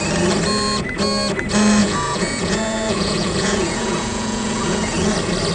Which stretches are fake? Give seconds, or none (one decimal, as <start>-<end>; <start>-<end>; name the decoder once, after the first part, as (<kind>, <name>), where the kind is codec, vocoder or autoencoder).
1.8-5.1 (vocoder, Vocos)